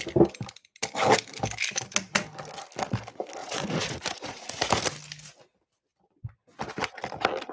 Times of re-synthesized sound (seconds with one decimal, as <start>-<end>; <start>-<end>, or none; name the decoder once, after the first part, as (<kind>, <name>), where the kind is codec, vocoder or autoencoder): 3.4-4.7 (vocoder, Vocos)